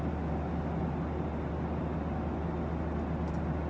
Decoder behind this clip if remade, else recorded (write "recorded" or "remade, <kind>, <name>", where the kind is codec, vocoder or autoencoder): recorded